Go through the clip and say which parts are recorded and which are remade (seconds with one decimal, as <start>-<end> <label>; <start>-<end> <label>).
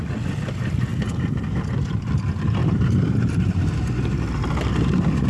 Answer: 0.0-2.6 recorded; 2.6-4.5 remade; 4.5-5.3 recorded